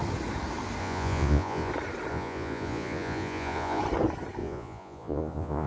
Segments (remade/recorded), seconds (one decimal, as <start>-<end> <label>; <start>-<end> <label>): 0.0-0.8 recorded; 0.8-1.7 remade; 1.7-2.1 recorded; 2.1-3.8 remade; 3.8-4.4 recorded; 4.4-5.7 remade